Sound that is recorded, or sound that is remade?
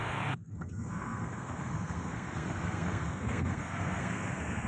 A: remade